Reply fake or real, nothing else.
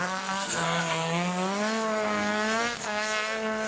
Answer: fake